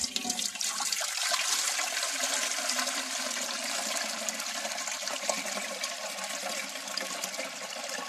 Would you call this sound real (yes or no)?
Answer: no